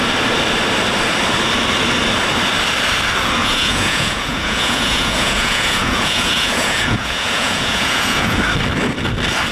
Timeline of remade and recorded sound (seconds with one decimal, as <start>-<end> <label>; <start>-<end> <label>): 0.0-3.4 recorded; 3.4-8.4 remade; 8.4-9.5 recorded